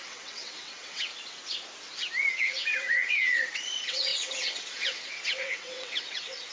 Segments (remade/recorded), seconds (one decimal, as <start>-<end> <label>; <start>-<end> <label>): 0.0-1.1 remade; 1.1-2.3 recorded; 2.3-6.5 remade